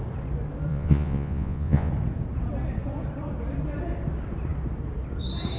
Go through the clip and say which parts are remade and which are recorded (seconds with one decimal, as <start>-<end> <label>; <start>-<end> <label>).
0.0-0.7 recorded; 0.7-1.9 remade; 1.9-5.6 recorded